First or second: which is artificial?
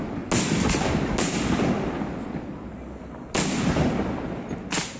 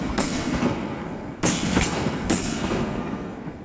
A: second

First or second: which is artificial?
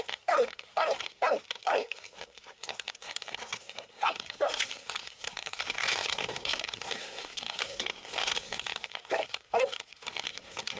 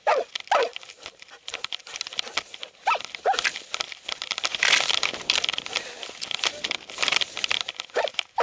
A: first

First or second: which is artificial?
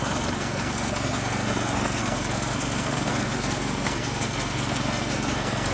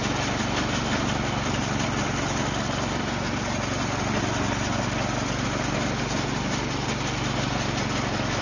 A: first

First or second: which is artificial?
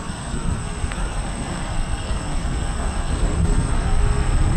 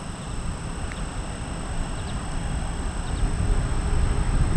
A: first